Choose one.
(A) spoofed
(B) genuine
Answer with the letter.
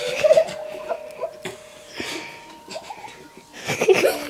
B